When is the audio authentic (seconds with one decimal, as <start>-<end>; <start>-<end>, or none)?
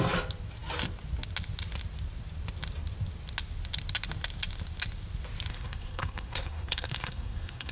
0.0-5.5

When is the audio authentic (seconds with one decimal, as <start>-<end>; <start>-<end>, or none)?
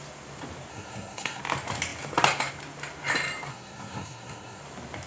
0.0-0.7; 1.4-3.5; 4.6-5.1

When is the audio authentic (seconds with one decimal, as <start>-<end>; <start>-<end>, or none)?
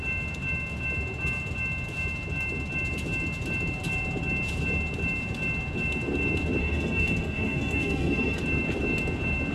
0.0-6.6; 8.4-9.5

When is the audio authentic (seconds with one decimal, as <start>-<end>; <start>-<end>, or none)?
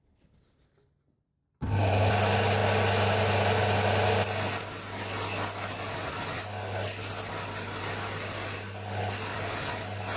0.0-10.2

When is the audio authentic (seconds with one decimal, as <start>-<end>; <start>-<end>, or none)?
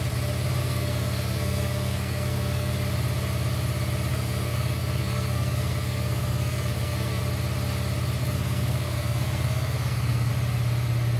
0.0-0.6; 2.7-4.1; 7.2-8.2; 10.3-11.2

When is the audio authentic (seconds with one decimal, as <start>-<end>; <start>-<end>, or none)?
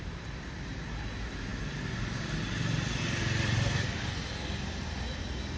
0.0-5.6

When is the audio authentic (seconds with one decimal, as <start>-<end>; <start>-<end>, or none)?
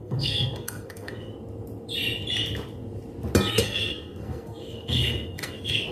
1.3-3.5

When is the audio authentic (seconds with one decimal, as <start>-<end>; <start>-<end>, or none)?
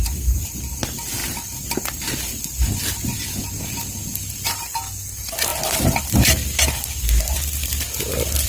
0.0-8.5